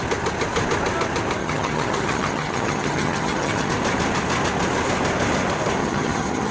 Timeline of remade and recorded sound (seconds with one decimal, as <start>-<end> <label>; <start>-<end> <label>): 0.0-1.4 recorded; 1.4-3.7 remade; 3.7-5.8 recorded; 5.8-6.5 remade